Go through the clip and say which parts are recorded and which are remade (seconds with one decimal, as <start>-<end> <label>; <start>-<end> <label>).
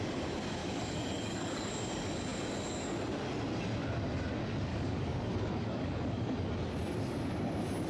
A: 0.0-0.6 recorded; 0.6-1.7 remade; 1.7-4.7 recorded; 4.7-6.5 remade; 6.5-7.9 recorded